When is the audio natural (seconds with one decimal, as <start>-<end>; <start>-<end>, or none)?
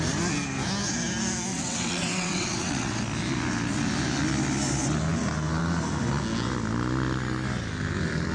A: 0.0-1.5; 3.0-8.3